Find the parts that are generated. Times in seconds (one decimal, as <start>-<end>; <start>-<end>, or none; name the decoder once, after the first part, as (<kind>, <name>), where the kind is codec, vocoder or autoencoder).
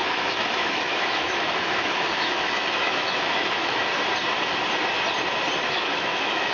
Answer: 0.0-3.9 (autoencoder, DAC-VAE); 5.7-6.5